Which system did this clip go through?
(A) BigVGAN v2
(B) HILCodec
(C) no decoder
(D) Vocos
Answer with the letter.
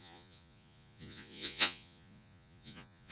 D